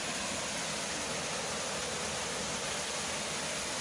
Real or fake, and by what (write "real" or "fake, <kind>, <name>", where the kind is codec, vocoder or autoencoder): real